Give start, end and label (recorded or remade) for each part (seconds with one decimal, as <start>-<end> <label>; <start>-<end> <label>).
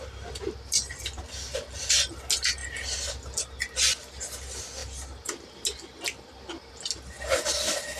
0.0-8.0 recorded